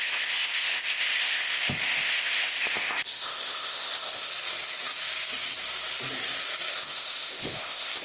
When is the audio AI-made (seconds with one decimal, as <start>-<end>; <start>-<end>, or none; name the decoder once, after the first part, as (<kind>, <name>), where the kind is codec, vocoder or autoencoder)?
0.0-4.3 (codec, ZipCodec); 6.7-8.0